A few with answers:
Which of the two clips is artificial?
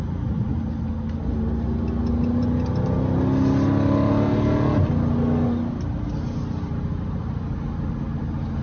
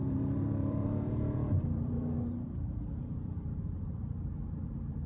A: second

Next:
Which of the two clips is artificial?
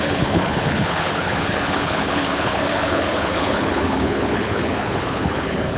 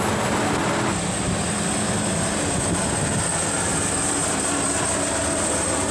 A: first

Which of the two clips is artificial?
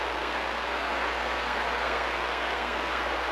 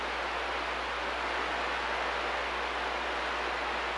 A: first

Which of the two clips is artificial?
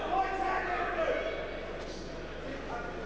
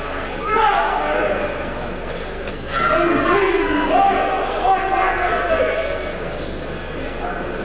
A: second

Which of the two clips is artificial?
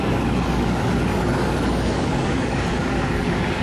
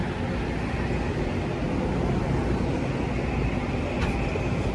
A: first